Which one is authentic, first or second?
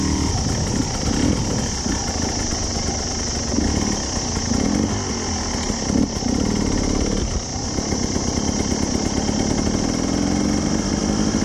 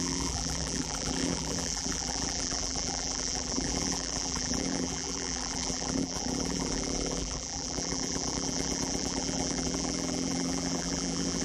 first